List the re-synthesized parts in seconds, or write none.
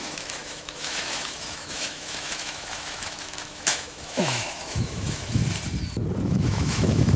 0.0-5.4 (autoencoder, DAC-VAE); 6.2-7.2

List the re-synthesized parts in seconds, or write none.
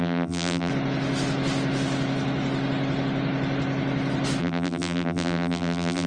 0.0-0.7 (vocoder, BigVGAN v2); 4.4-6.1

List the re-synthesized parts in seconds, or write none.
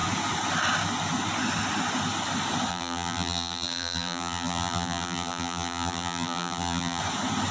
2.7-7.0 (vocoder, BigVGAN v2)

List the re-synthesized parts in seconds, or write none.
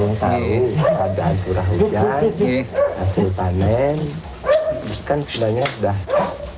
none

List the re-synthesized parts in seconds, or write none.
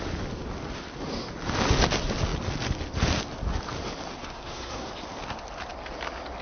4.2-4.9 (codec, SNAC)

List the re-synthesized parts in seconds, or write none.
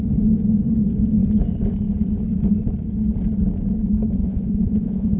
4.2-5.2 (vocoder, Vocos)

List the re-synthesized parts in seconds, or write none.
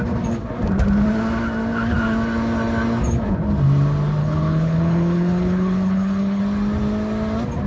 4.2-6.4 (codec, HILCodec)